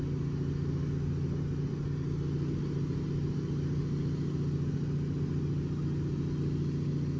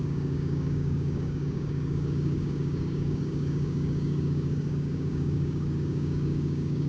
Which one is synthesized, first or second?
second